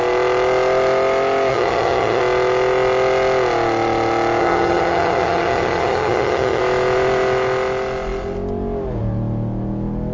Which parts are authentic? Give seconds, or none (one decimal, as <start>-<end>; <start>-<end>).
0.0-1.5; 2.2-4.4; 6.6-10.1